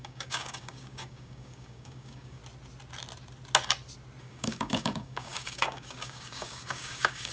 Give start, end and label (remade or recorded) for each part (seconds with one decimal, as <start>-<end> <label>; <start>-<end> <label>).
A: 0.0-2.4 remade; 2.4-4.2 recorded; 4.2-7.3 remade

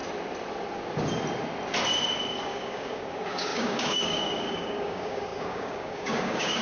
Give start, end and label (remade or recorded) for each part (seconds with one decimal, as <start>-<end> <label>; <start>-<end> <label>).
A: 0.0-2.4 recorded; 2.4-6.6 remade